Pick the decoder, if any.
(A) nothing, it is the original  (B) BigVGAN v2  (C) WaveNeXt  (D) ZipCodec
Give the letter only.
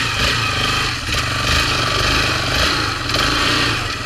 A